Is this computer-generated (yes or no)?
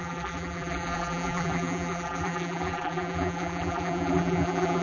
yes